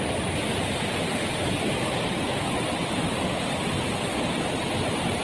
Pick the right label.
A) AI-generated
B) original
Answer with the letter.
B